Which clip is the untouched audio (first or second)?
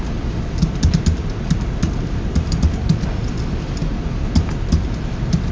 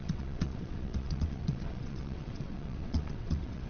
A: first